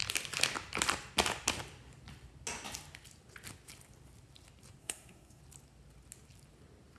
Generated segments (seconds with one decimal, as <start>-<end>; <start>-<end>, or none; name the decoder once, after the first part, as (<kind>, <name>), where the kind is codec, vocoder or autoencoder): 4.8-5.4 (codec, SNAC)

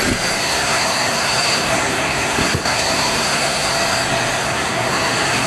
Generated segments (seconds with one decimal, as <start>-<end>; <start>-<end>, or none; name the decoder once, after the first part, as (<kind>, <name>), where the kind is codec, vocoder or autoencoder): 0.4-3.7 (codec, SNAC); 4.4-5.5

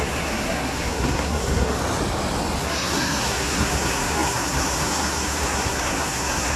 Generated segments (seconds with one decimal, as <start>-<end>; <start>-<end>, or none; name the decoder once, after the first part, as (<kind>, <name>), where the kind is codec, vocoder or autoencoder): 0.0-1.8 (codec, SNAC); 2.6-6.6

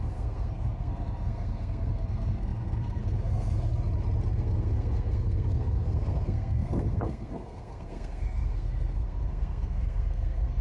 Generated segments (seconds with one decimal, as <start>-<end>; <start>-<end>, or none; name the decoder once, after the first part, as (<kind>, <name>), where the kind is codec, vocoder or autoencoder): 0.0-3.7 (codec, SNAC); 4.3-10.6

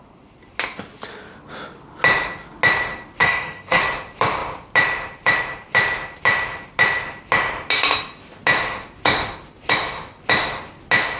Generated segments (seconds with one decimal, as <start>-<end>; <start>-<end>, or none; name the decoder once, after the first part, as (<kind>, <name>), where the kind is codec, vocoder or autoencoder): 3.2-3.8 (codec, SNAC)